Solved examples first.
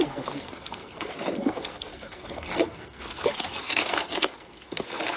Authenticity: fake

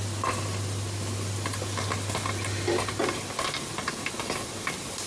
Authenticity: real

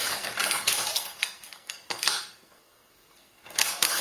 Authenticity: fake